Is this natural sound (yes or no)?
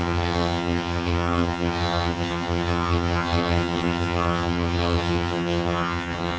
no